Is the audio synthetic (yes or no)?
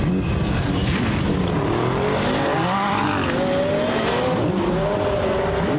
no